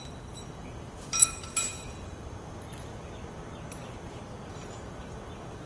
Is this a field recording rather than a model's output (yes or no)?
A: no